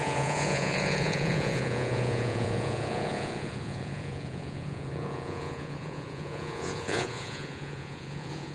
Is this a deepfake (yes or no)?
yes